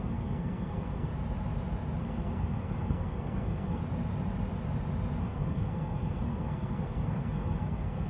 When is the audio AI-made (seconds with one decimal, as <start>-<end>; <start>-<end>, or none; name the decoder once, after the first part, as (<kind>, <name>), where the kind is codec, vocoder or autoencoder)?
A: 0.0-1.1 (codec, SNAC); 2.0-3.8; 5.2-8.1